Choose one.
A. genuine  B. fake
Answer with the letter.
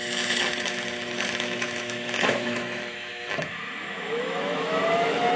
B